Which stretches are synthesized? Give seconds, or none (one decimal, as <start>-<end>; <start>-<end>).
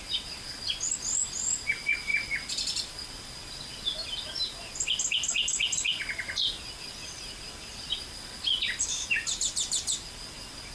none